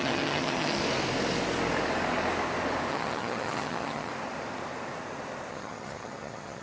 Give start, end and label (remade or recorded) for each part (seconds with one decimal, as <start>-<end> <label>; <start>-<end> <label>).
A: 0.0-0.8 remade; 0.8-2.9 recorded; 2.9-4.1 remade; 4.1-5.5 recorded; 5.5-6.6 remade